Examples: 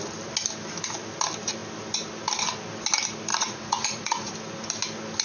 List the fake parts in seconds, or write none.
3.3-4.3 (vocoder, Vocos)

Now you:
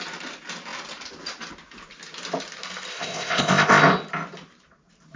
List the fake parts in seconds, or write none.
2.9-3.8 (codec, ZipCodec)

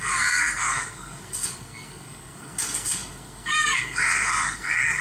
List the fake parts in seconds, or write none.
0.0-5.0 (codec, SNAC)

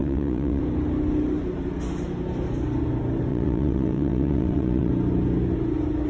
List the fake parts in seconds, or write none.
0.0-0.6 (vocoder, WaveNeXt); 3.3-4.9

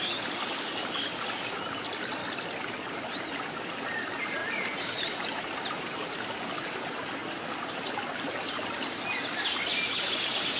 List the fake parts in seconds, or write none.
4.4-6.2 (vocoder, BigVGAN v2); 9.7-10.6

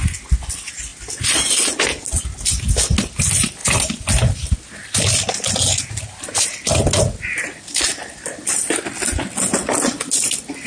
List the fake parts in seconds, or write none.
none

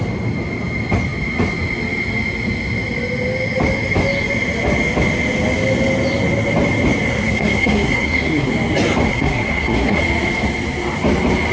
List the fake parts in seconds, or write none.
7.1-8.5 (codec, SNAC); 9.1-10.0

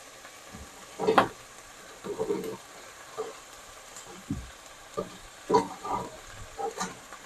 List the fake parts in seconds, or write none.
2.5-7.3 (vocoder, BigVGAN v2)